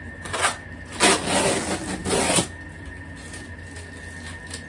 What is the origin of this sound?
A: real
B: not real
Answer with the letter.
A